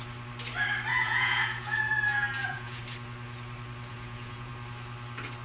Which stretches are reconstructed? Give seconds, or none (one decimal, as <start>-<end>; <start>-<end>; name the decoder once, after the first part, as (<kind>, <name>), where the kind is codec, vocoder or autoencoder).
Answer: 0.9-2.8 (vocoder, Vocos); 3.9-4.5